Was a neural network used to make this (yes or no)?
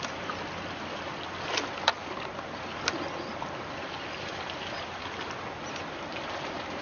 no